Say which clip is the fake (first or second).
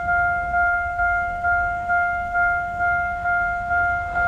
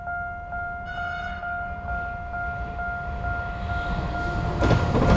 first